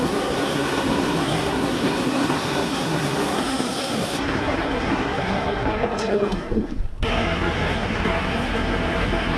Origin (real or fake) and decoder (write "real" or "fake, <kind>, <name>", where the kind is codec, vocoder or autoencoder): fake, codec, SNAC